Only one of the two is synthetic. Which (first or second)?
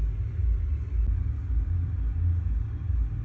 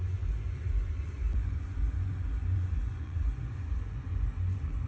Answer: second